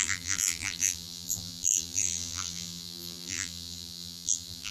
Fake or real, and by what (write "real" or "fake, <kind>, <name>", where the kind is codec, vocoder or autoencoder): fake, vocoder, BigVGAN v2